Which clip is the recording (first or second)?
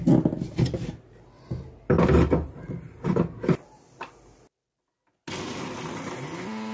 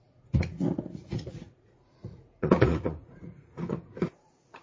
first